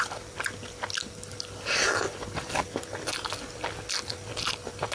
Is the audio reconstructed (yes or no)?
no